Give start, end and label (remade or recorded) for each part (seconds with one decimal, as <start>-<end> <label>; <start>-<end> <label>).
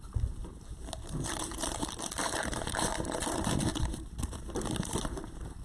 0.0-3.7 remade; 3.7-5.0 recorded; 5.0-5.6 remade